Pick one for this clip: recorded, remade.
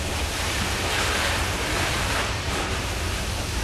remade